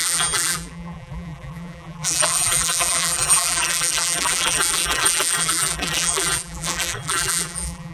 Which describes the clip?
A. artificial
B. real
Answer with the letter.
A